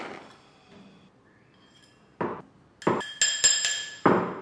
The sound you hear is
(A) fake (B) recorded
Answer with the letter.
B